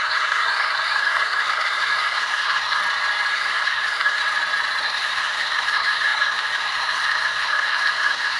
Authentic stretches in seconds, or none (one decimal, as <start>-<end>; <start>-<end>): 2.8-3.3; 4.2-4.8